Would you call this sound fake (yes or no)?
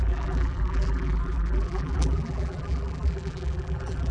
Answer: yes